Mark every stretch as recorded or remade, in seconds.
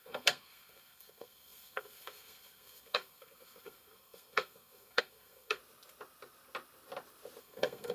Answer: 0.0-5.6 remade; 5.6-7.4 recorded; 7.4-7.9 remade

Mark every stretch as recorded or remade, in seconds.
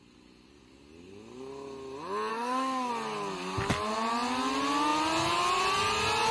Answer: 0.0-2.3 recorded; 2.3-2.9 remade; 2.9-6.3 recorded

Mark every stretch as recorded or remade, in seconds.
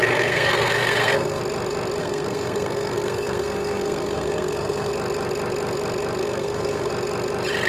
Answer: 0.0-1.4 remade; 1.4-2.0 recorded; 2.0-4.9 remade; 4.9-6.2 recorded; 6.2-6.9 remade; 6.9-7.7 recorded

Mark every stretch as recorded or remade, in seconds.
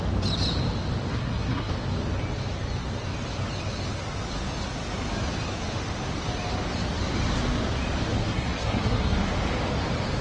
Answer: 0.0-1.1 recorded; 1.1-1.7 remade; 1.7-8.2 recorded; 8.2-9.2 remade; 9.2-10.2 recorded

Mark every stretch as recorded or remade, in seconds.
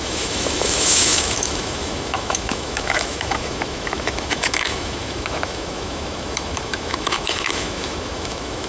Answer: 0.0-8.7 remade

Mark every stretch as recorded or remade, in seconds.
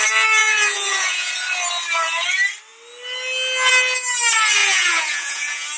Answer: 0.0-0.4 recorded; 0.4-1.3 remade; 1.3-4.6 recorded; 4.6-5.8 remade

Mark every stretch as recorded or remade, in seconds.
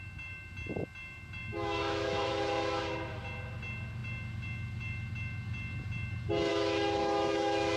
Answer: 0.0-1.5 recorded; 1.5-2.3 remade; 2.3-6.5 recorded; 6.5-7.8 remade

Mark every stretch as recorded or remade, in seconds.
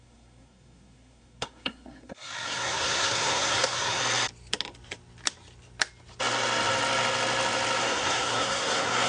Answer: 0.0-4.0 remade; 4.0-7.8 recorded; 7.8-9.1 remade